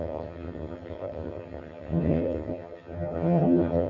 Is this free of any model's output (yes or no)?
no